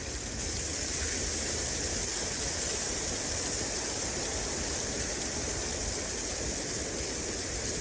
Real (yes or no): yes